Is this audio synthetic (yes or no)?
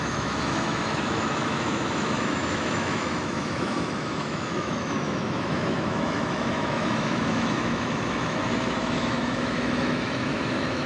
yes